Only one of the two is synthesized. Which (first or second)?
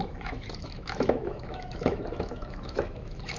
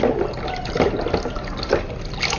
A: first